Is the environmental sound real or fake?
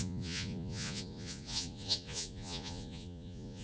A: fake